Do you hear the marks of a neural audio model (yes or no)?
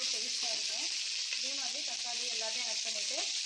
no